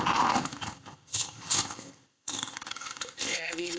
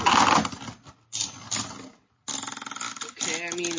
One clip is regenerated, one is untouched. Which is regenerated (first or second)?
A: first